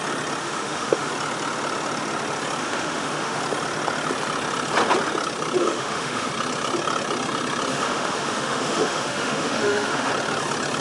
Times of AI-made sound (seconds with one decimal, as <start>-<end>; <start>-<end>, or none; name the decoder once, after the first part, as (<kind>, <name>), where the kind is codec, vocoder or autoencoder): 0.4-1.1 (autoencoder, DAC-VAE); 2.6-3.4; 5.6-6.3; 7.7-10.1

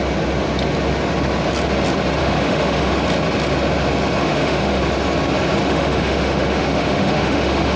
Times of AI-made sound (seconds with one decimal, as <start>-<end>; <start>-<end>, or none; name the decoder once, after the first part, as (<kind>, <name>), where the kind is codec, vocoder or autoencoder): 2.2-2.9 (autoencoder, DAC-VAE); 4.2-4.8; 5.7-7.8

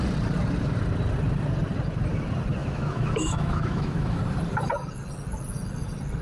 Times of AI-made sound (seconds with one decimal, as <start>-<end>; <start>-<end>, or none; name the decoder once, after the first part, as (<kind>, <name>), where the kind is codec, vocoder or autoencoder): 2.6-4.2 (autoencoder, DAC-VAE)

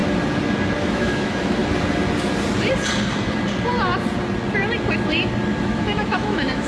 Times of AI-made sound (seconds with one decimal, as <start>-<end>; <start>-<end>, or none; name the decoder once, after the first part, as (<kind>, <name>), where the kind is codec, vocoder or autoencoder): 0.8-1.6 (autoencoder, DAC-VAE); 5.6-6.7

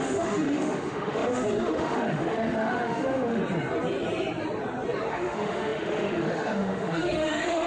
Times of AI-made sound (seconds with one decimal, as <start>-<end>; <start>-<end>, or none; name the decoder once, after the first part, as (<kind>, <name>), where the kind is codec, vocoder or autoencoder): 0.0-3.4 (autoencoder, DAC-VAE); 5.1-7.7

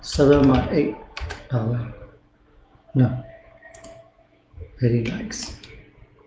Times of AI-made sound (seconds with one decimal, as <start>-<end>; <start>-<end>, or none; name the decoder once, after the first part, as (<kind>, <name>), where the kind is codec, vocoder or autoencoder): 0.5-1.5 (autoencoder, DAC-VAE); 2.0-5.8

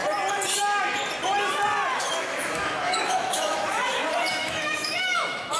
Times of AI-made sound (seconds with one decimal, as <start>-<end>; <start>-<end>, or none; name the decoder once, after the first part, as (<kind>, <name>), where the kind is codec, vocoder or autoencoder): 1.9-3.8 (autoencoder, DAC-VAE); 4.4-5.6